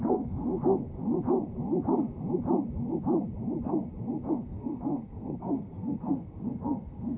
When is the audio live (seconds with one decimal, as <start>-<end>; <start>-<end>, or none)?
0.9-4.3